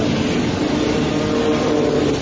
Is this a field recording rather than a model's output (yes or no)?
yes